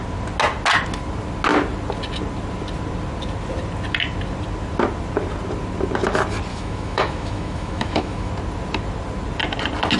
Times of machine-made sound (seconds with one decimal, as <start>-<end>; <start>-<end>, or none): 6.5-8.3